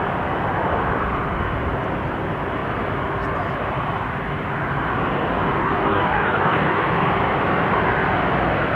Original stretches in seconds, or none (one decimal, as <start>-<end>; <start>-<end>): 0.0-5.6; 6.9-8.8

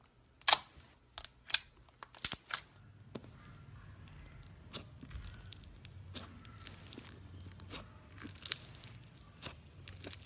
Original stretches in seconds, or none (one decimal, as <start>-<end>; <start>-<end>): 0.0-10.3

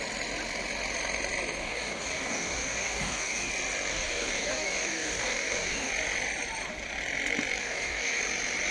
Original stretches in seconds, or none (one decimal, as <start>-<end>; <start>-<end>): 0.0-1.6; 3.5-3.9; 5.9-7.6; 8.2-8.7

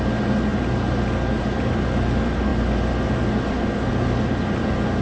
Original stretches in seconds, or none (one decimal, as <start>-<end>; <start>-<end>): 0.0-5.0

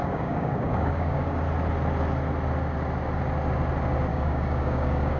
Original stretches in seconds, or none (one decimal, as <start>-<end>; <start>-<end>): 1.4-4.1

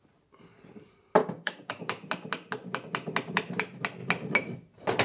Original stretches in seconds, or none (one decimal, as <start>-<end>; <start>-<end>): 0.0-1.2; 1.8-5.0